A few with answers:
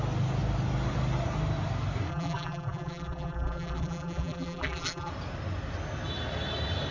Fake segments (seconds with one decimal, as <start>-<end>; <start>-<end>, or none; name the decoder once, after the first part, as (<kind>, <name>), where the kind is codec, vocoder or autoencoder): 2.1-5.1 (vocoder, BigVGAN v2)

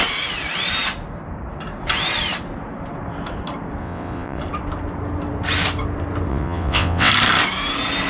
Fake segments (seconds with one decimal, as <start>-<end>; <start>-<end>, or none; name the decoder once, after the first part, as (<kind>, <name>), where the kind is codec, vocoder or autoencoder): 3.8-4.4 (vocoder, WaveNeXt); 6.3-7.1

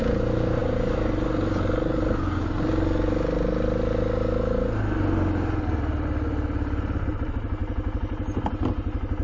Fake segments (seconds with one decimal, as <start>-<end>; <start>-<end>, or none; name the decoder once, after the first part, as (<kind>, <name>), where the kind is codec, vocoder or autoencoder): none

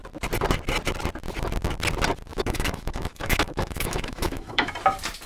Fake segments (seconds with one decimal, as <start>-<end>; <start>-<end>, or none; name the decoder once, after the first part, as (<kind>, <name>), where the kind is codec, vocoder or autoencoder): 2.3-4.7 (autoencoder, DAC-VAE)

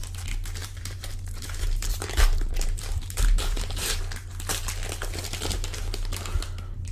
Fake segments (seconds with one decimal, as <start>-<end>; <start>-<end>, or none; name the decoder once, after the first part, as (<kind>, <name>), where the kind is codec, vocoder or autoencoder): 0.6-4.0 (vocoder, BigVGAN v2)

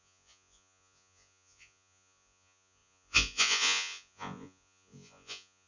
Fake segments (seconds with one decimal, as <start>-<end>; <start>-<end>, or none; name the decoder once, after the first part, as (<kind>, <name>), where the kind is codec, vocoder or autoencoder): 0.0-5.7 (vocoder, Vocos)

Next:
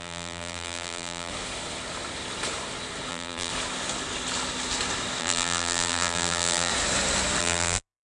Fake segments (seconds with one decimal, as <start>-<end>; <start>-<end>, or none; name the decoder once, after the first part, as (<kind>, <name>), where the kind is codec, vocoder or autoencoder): 0.0-1.3 (vocoder, BigVGAN v2); 3.1-3.5; 5.2-6.7; 7.4-8.0

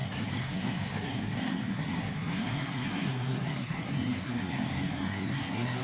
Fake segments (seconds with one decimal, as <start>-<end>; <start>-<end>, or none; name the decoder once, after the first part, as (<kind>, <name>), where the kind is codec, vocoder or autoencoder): 0.0-5.8 (codec, SNAC)